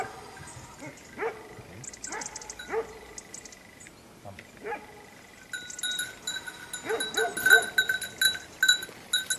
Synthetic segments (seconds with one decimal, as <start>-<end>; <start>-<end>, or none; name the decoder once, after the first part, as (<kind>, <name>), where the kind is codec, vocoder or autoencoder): none